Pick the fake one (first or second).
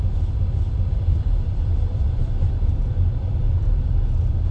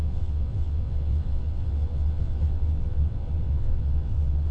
second